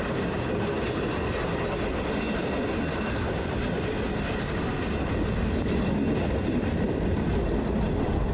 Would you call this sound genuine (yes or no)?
yes